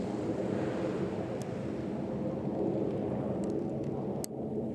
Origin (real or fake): real